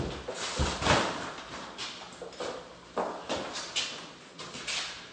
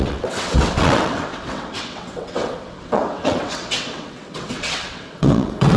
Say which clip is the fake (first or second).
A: second